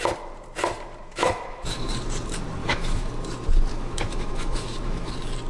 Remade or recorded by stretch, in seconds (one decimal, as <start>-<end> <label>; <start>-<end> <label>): 0.0-1.1 recorded; 1.1-1.9 remade; 1.9-2.6 recorded; 2.6-3.1 remade; 3.1-3.7 recorded; 3.7-5.1 remade; 5.1-5.5 recorded